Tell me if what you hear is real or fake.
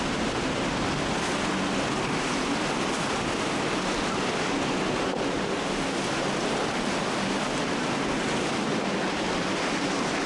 real